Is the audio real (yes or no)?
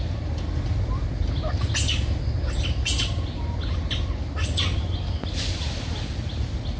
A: yes